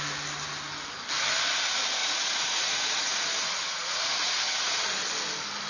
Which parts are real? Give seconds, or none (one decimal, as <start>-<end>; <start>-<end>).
0.0-2.0; 4.7-5.7